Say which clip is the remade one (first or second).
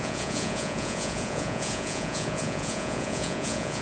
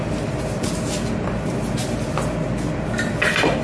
first